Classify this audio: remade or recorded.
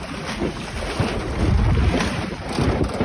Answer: recorded